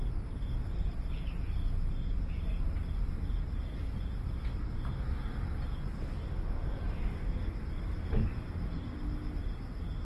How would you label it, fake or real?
real